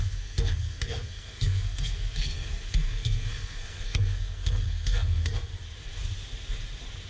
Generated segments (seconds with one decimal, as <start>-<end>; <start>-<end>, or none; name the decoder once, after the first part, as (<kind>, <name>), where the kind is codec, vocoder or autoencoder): 0.0-5.5 (codec, SNAC)